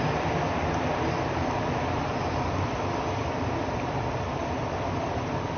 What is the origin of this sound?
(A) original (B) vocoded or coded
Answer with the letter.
B